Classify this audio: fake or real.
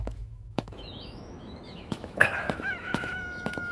fake